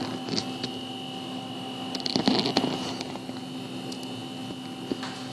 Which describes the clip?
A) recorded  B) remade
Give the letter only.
A